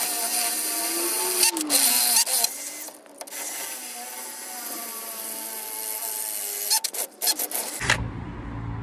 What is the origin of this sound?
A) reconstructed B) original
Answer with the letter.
B